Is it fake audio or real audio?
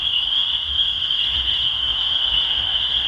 fake